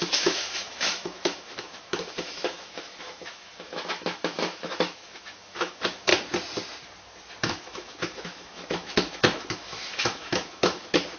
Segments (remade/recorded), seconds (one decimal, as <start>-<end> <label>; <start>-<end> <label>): 0.0-6.1 remade; 6.1-7.4 recorded; 7.4-11.2 remade